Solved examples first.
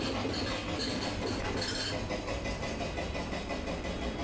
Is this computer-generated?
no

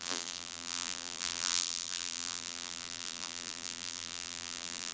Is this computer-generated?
yes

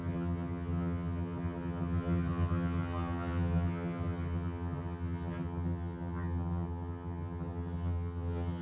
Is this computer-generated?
yes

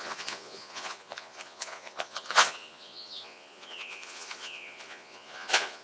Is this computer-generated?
yes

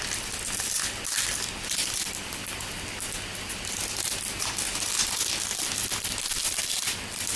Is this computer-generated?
no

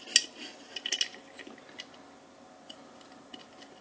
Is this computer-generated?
no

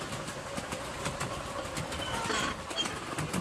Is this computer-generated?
no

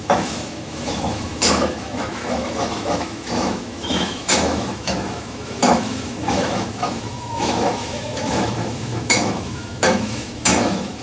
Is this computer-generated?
yes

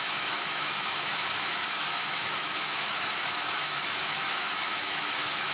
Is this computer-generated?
yes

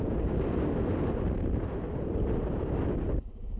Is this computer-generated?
no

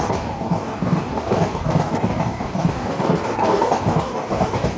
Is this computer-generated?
yes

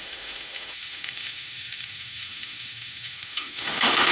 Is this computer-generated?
yes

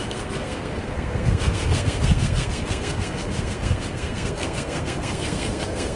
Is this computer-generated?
yes